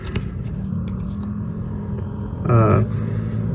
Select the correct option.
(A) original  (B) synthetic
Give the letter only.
A